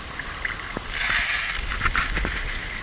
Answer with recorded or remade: recorded